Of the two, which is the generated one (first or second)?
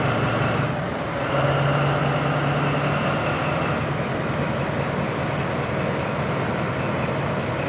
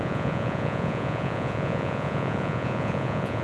second